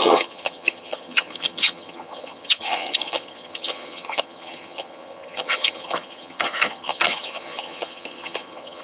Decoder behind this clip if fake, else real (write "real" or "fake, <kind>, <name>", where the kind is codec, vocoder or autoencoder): fake, vocoder, HiFi-GAN